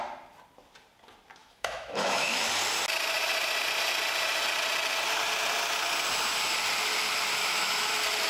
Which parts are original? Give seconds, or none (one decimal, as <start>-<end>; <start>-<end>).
0.0-1.4; 2.5-7.4; 7.9-8.3